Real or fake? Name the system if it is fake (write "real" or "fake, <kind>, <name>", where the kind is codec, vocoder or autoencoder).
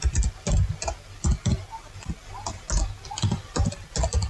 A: real